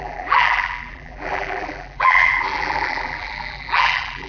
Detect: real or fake fake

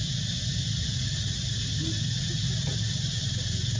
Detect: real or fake real